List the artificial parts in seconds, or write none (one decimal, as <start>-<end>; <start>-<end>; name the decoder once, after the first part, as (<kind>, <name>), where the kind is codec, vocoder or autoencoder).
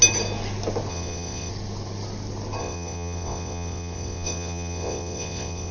0.9-1.5 (vocoder, WaveNeXt); 2.6-5.7